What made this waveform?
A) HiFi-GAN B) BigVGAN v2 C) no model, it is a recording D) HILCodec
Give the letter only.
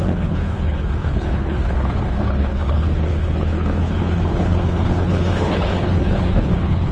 D